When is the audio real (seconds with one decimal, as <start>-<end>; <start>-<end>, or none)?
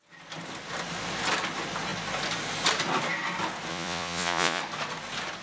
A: 0.0-3.7; 4.6-5.4